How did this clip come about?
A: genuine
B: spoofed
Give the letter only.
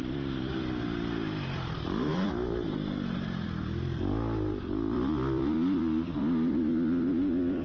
B